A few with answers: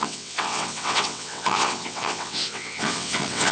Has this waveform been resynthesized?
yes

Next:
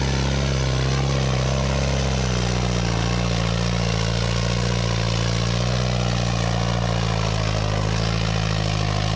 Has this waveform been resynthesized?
no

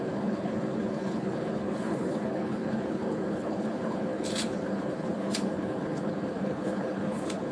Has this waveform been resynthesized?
yes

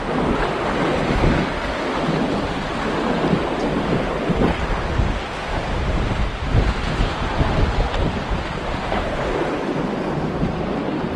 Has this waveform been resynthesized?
no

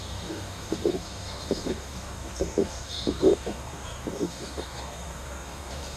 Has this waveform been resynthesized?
yes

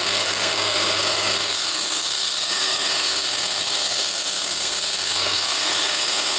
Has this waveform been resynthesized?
yes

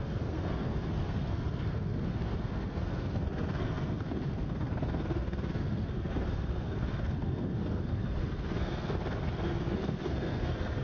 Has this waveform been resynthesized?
yes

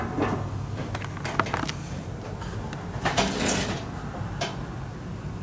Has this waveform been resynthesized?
no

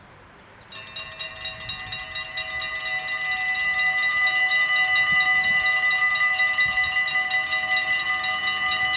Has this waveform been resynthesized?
no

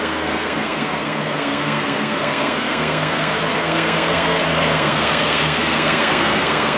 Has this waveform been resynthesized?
yes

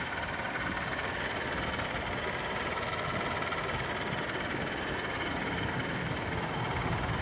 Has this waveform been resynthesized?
no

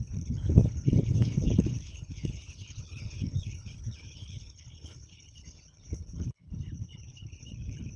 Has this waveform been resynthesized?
yes